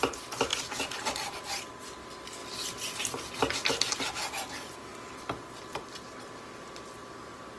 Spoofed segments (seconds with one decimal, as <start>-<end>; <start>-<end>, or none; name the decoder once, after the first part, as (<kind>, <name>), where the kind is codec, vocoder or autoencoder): none